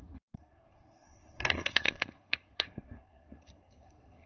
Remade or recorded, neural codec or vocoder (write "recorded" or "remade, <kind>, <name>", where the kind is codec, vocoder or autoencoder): remade, codec, SNAC